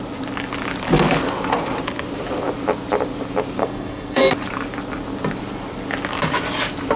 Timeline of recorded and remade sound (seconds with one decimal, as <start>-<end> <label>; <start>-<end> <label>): 0.0-3.6 recorded; 3.6-4.2 remade; 4.2-7.0 recorded